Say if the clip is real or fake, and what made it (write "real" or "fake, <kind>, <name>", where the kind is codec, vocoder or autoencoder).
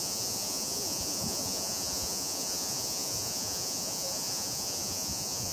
fake, vocoder, Vocos